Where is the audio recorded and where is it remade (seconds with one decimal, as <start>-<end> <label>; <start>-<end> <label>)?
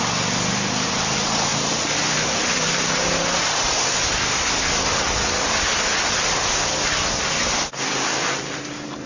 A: 0.0-9.1 recorded